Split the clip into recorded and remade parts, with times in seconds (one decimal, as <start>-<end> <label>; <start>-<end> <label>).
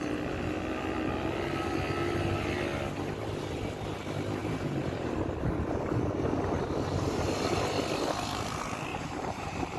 0.0-4.4 recorded; 4.4-5.1 remade; 5.1-8.9 recorded; 8.9-9.8 remade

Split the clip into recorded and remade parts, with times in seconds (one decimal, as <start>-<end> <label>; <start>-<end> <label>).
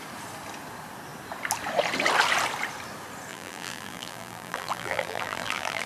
0.0-3.3 recorded; 3.3-5.9 remade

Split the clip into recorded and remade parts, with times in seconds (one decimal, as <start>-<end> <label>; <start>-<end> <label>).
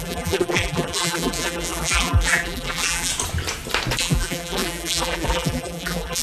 0.0-3.1 remade; 3.1-4.0 recorded; 4.0-6.2 remade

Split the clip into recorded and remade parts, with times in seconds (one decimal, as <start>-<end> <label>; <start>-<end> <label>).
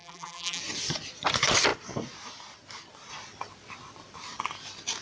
0.0-0.6 remade; 0.6-5.0 recorded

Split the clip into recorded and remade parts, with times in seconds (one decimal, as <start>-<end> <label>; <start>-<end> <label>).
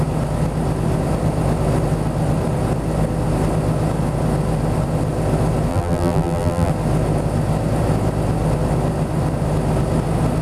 0.0-5.7 recorded; 5.7-6.7 remade; 6.7-10.4 recorded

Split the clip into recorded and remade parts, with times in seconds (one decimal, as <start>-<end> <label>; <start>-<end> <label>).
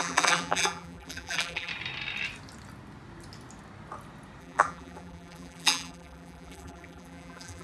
0.0-1.7 remade; 1.7-4.4 recorded; 4.4-7.6 remade